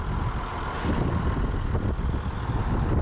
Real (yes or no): yes